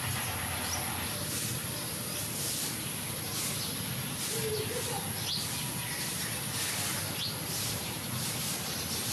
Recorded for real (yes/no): yes